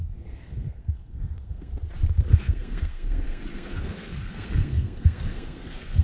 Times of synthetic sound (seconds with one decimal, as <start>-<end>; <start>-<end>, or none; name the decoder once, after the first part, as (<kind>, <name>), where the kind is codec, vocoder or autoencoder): 0.0-1.7 (codec, SNAC); 2.3-6.0

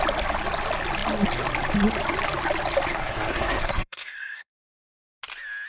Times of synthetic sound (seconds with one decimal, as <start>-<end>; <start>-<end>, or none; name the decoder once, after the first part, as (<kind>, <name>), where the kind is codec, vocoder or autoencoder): 2.9-4.6 (codec, SNAC)

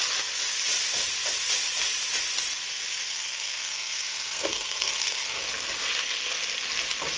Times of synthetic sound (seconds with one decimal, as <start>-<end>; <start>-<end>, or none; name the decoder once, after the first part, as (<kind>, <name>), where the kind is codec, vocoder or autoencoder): 3.1-5.4 (codec, SNAC)

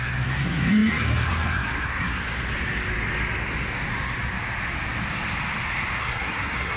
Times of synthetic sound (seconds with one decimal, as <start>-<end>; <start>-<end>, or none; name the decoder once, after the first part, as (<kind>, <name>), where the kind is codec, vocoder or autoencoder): 0.0-2.2 (codec, SNAC); 6.0-6.8

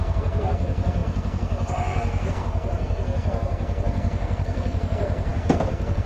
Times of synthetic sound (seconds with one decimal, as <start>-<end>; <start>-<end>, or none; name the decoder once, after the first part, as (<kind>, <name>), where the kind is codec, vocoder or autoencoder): 0.0-6.1 (codec, SNAC)